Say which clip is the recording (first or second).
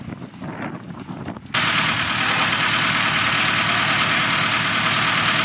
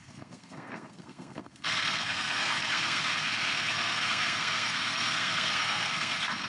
first